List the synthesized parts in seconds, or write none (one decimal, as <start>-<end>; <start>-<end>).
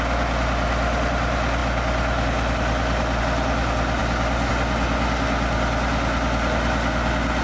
none